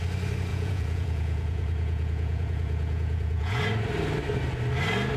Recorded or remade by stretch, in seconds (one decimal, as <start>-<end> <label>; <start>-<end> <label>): 0.0-0.5 recorded; 0.5-3.6 remade; 3.6-5.2 recorded